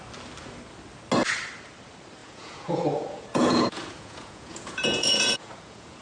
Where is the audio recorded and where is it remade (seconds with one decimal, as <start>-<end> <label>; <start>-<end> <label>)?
0.0-2.2 recorded; 2.2-6.0 remade